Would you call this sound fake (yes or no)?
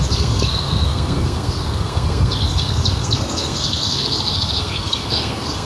yes